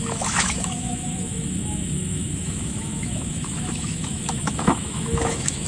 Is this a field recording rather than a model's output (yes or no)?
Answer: no